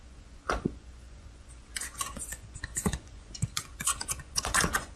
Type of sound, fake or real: fake